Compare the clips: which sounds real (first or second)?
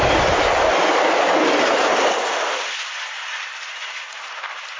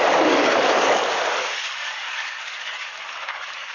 first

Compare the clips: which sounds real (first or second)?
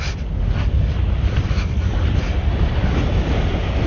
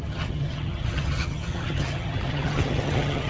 first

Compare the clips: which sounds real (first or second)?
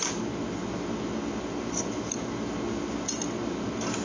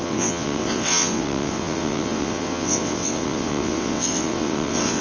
first